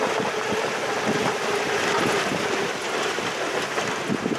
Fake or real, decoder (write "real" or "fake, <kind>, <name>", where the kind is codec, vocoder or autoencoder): real